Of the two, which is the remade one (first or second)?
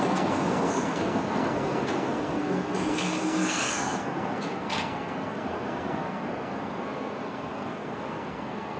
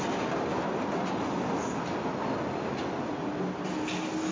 first